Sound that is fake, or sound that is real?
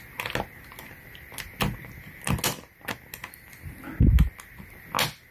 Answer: real